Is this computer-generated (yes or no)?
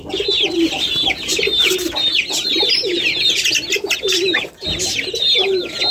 no